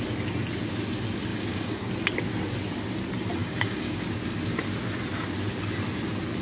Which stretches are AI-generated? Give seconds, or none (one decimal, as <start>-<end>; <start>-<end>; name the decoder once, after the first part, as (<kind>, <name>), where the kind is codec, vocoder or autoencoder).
1.3-1.9 (codec, DAC); 3.4-4.1